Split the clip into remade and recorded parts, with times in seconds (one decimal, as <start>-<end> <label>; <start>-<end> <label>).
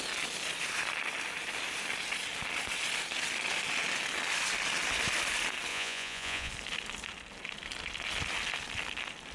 0.0-5.7 recorded; 5.7-6.5 remade; 6.5-9.3 recorded